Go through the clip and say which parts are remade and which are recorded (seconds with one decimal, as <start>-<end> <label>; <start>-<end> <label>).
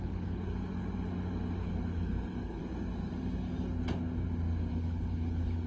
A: 0.0-0.5 remade; 0.5-1.6 recorded; 1.6-2.6 remade; 2.6-4.7 recorded; 4.7-5.7 remade